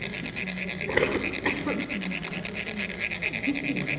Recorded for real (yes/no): yes